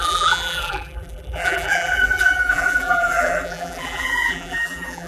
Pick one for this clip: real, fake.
fake